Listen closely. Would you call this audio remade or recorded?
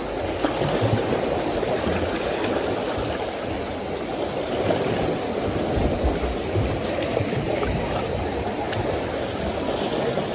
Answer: recorded